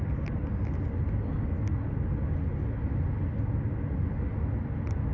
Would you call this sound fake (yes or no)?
no